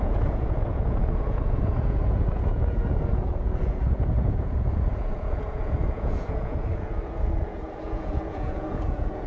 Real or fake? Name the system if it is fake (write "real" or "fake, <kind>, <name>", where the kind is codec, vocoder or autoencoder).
fake, vocoder, Vocos